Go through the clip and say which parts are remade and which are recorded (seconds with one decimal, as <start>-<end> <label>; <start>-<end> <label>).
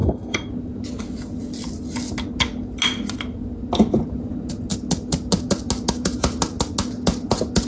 0.0-0.5 remade; 0.5-7.7 recorded